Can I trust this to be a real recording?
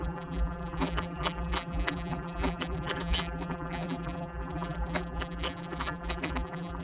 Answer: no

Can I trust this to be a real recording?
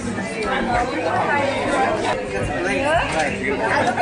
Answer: yes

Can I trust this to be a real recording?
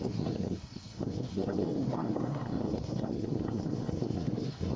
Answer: no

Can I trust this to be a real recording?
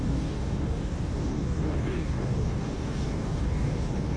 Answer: no